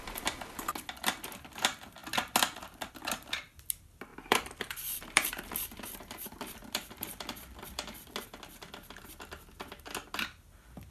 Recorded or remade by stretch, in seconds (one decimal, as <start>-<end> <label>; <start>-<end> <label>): 0.0-4.1 recorded; 4.1-8.1 remade; 8.1-10.9 recorded